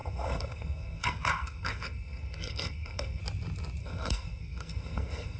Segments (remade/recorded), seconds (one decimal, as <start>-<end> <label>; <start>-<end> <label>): 0.0-3.2 remade; 3.2-3.8 recorded; 3.8-5.4 remade